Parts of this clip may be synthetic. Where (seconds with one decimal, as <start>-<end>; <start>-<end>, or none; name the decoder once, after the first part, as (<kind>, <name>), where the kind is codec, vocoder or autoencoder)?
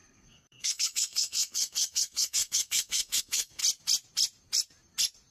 0.0-3.6 (codec, SNAC)